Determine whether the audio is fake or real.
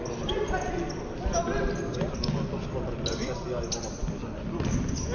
real